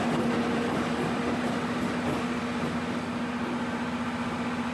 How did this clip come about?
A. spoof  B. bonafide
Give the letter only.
B